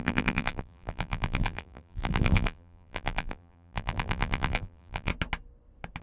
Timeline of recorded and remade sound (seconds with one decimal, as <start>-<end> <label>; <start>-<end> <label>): 0.0-5.1 remade; 5.1-6.0 recorded